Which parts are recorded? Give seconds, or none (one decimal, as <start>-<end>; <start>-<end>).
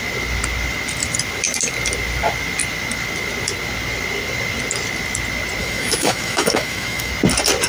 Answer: 0.0-5.6; 7.1-7.7